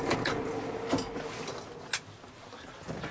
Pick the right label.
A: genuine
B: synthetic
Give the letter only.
A